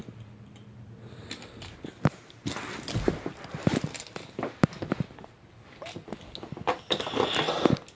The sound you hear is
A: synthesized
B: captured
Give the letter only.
B